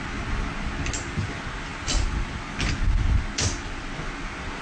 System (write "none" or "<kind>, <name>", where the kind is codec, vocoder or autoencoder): none